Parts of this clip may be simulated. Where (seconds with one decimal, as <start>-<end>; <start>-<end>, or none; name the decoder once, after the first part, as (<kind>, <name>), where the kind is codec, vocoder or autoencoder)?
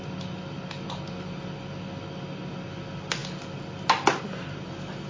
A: none